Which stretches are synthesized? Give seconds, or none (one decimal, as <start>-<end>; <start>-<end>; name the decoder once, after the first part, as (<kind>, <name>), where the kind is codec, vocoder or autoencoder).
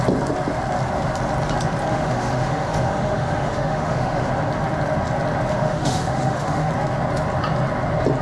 1.9-4.3 (autoencoder, DAC-VAE); 5.5-6.7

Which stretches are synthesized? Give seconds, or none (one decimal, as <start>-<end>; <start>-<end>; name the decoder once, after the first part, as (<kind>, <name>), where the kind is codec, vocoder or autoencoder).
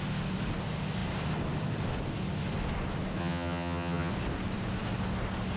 3.2-4.1 (vocoder, HiFi-GAN)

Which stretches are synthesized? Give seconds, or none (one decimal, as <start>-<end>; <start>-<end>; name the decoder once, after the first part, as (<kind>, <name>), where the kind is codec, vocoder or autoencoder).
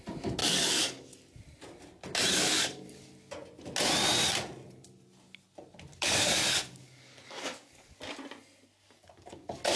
0.4-1.1 (codec, DAC); 2.3-3.1; 5.9-8.0; 8.8-9.8